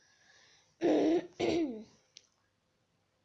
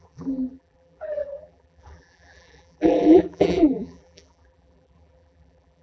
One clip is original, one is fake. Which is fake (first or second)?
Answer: second